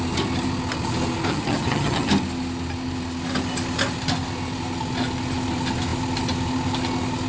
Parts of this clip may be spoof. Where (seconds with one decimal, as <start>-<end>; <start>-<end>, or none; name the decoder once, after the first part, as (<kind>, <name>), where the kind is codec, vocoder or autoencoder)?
1.3-2.1 (vocoder, HiFi-GAN)